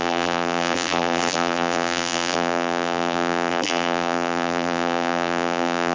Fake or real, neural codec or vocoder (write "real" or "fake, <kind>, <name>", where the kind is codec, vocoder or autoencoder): fake, vocoder, BigVGAN v2